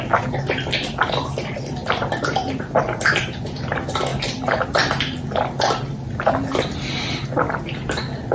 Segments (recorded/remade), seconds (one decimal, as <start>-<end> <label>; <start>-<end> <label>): 0.0-1.8 recorded; 1.8-3.0 remade; 3.0-8.3 recorded